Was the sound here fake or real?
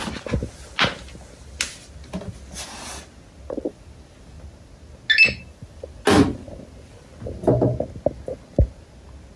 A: real